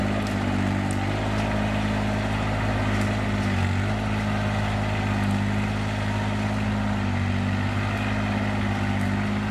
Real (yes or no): yes